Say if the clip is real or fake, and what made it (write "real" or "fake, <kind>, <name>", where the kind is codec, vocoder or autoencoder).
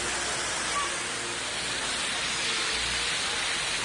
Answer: real